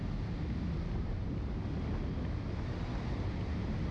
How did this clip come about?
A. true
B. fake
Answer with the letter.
A